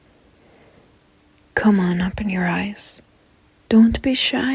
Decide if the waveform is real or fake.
real